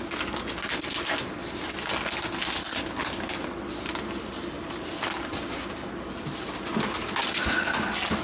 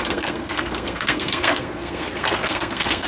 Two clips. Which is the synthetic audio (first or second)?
second